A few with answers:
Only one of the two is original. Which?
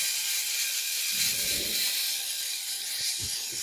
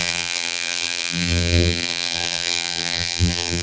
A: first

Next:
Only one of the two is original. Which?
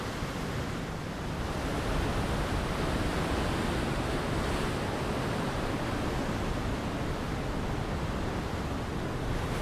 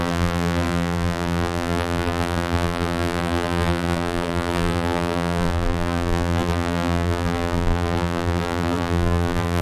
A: first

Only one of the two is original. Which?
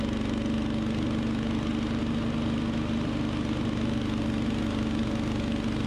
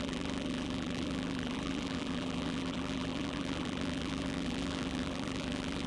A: first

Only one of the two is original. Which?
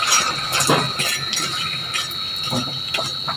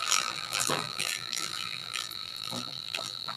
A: first